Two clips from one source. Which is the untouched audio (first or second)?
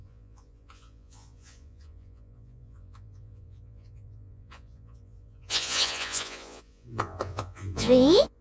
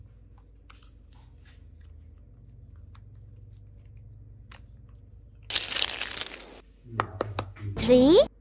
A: second